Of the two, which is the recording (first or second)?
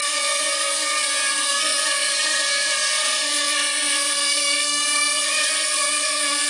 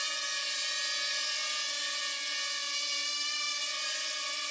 second